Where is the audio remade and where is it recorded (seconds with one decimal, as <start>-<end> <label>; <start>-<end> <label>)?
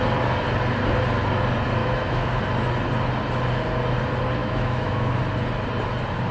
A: 0.0-1.8 recorded; 1.8-2.4 remade; 2.4-4.4 recorded; 4.4-5.2 remade; 5.2-6.3 recorded